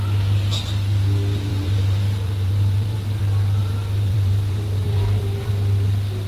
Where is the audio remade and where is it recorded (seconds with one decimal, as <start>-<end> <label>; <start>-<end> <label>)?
0.0-1.5 recorded; 1.5-3.2 remade; 3.2-3.6 recorded; 3.6-5.5 remade; 5.5-6.3 recorded